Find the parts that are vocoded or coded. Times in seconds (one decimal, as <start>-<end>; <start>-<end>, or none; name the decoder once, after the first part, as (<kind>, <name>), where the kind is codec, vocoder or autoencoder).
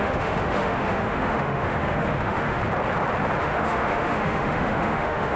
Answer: 0.0-2.6 (autoencoder, DAC-VAE); 3.4-5.4